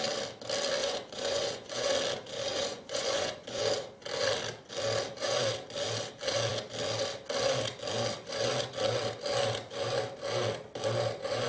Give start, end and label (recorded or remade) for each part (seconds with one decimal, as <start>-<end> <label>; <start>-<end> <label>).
0.0-0.8 recorded; 0.8-1.9 remade; 1.9-2.5 recorded; 2.5-3.6 remade; 3.6-11.5 recorded